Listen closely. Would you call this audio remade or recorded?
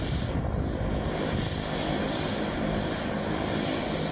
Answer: recorded